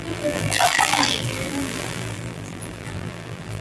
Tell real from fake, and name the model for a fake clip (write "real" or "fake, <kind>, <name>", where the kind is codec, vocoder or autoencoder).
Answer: fake, vocoder, BigVGAN v2